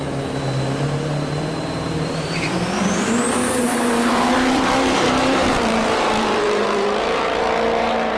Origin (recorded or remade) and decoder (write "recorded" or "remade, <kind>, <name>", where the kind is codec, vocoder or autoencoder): remade, vocoder, BigVGAN v2